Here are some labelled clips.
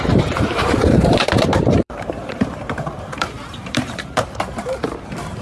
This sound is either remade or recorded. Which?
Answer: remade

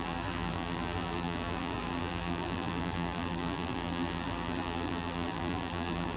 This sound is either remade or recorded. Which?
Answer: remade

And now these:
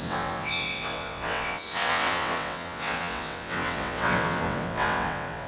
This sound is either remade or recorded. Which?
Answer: remade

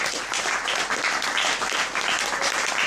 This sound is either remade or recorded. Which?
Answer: recorded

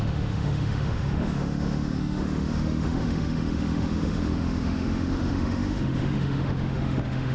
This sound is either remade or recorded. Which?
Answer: remade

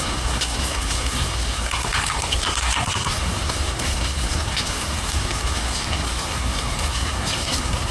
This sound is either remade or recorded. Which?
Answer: remade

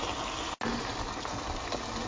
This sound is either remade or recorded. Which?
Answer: recorded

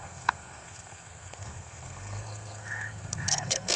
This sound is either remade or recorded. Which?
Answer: remade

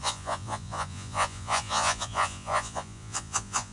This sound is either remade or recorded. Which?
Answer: remade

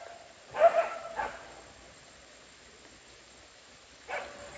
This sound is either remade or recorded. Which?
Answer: recorded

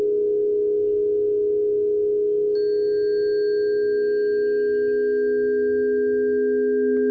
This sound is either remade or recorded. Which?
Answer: recorded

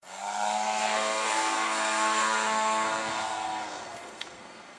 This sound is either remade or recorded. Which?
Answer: remade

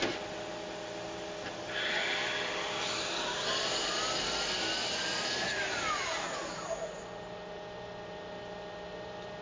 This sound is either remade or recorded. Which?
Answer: recorded